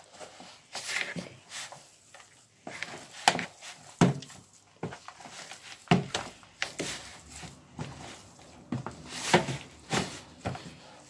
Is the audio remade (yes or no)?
no